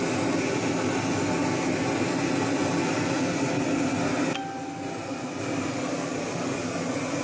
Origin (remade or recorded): recorded